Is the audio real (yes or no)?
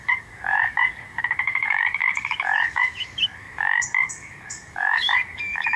no